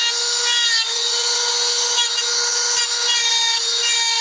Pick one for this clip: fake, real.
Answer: real